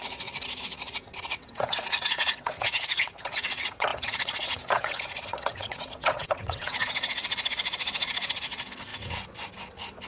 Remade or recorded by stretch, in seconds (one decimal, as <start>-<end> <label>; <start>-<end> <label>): 0.0-10.1 remade